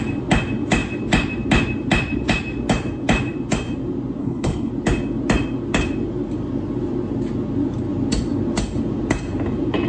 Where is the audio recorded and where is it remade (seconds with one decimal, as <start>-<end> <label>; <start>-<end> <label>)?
0.0-4.2 recorded; 4.2-4.7 remade; 4.7-9.9 recorded